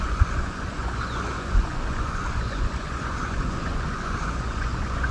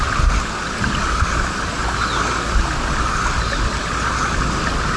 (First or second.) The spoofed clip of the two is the first